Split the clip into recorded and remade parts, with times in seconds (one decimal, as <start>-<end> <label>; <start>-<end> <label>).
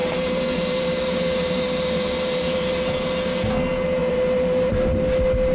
0.0-2.9 remade; 2.9-4.0 recorded; 4.0-4.9 remade; 4.9-5.5 recorded